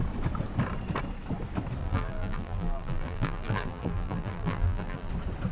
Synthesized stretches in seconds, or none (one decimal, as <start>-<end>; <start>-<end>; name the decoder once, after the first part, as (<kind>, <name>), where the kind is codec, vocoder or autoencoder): 1.8-5.1 (vocoder, BigVGAN v2)